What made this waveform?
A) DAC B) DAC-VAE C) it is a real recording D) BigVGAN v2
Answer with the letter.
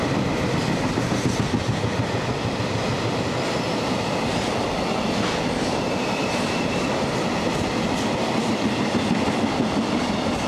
C